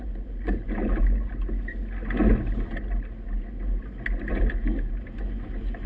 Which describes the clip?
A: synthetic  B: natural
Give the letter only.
B